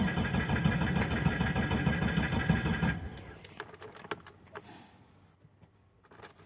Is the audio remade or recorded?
recorded